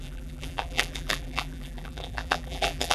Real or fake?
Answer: fake